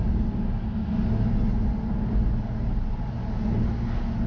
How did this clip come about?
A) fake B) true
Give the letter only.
B